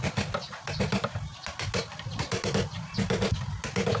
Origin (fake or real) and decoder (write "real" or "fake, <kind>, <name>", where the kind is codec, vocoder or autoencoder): real